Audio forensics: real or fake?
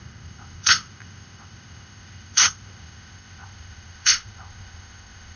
fake